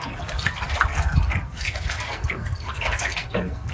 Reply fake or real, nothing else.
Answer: fake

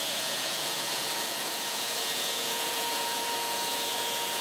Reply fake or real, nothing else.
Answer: fake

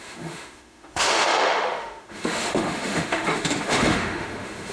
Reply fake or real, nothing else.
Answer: fake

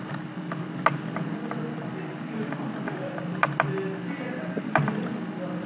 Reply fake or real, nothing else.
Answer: real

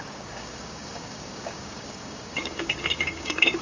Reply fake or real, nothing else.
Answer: fake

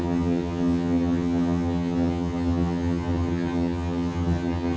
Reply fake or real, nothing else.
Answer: fake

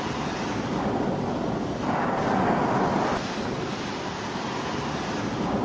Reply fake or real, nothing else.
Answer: real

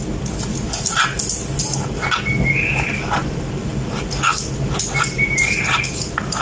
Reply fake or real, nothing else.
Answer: real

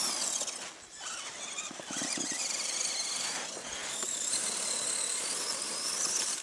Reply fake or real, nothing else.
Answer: real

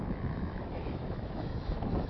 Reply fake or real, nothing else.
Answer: fake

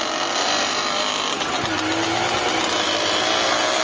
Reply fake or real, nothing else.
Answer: real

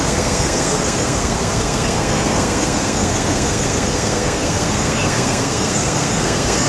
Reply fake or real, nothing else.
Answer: fake